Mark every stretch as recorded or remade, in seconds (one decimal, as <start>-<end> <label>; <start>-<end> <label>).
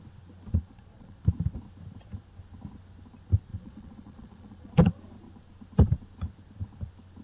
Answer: 0.0-0.5 recorded; 0.5-1.2 remade; 1.2-3.5 recorded; 3.5-4.7 remade; 4.7-7.2 recorded